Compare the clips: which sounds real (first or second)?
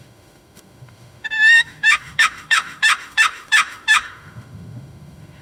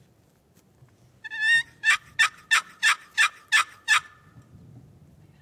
second